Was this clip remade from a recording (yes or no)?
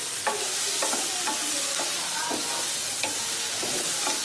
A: no